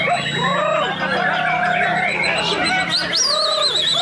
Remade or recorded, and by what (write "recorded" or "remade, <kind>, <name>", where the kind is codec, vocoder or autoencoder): recorded